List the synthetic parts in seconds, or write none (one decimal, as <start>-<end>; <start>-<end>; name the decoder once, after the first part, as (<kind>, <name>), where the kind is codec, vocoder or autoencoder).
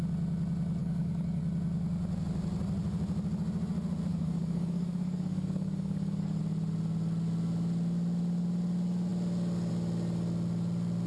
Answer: 0.8-1.4 (codec, DAC); 4.1-6.4